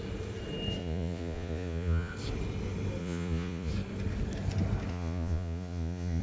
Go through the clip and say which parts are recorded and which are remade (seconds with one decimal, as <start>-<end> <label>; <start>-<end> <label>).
0.0-0.8 recorded; 0.8-2.1 remade; 2.1-3.0 recorded; 3.0-3.7 remade; 3.7-4.9 recorded; 4.9-6.2 remade